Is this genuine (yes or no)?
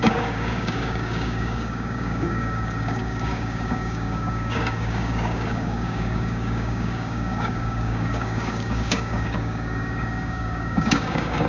no